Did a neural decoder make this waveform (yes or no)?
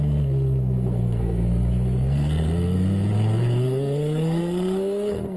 yes